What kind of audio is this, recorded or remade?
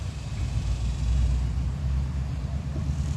remade